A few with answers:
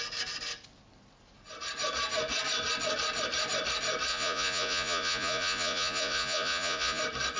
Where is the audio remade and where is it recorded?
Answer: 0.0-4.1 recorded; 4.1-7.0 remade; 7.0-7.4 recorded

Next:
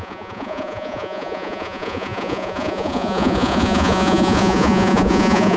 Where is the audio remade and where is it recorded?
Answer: 0.0-5.6 remade

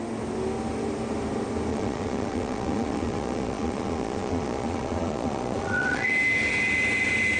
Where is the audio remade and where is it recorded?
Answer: 0.0-1.7 recorded; 1.7-6.1 remade; 6.1-7.4 recorded

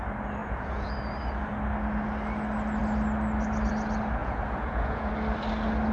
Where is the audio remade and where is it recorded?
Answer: 0.0-0.4 recorded; 0.4-0.9 remade; 0.9-4.2 recorded; 4.2-5.1 remade; 5.1-5.9 recorded

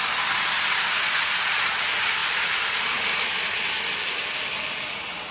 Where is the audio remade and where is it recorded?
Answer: 0.0-1.1 recorded; 1.1-1.7 remade; 1.7-5.3 recorded

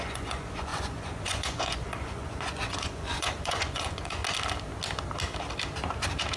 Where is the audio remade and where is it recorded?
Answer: 0.0-4.2 remade; 4.2-6.4 recorded

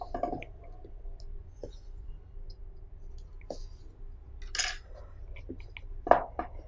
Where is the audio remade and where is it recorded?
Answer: 0.0-1.4 recorded; 1.4-2.1 remade; 2.1-6.7 recorded

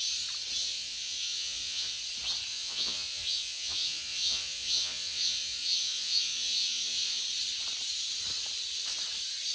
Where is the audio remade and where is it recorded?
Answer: 0.0-0.6 recorded; 0.6-2.0 remade; 2.0-2.5 recorded; 2.5-7.2 remade; 7.2-9.5 recorded